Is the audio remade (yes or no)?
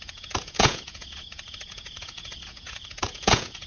yes